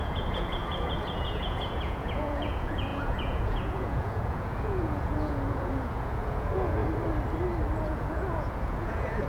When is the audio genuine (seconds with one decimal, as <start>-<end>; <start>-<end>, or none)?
6.8-7.8